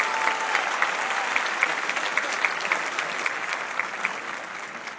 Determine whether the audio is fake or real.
real